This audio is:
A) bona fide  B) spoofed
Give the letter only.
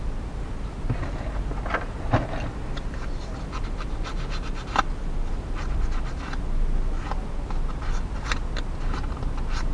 A